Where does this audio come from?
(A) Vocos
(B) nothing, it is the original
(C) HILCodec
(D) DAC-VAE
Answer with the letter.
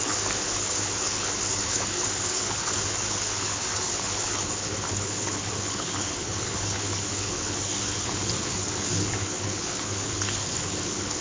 C